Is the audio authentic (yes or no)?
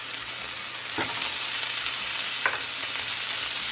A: yes